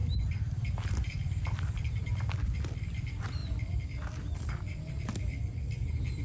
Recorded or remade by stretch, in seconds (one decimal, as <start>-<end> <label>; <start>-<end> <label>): 0.0-6.2 recorded